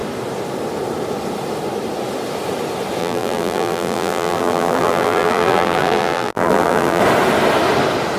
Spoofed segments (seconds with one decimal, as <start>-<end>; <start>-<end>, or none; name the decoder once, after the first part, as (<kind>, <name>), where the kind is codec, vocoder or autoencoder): 3.0-7.0 (vocoder, BigVGAN v2)